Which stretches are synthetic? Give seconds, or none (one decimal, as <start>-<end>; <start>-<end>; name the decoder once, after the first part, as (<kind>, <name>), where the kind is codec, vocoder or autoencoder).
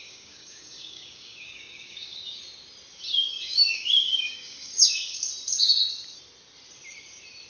0.0-2.4 (codec, DAC); 3.3-5.2